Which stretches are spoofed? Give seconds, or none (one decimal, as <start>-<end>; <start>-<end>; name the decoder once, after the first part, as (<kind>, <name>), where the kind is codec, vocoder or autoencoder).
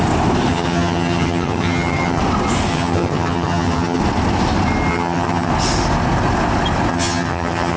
0.5-2.2 (vocoder, HiFi-GAN); 2.7-4.0; 4.9-5.5; 6.9-7.8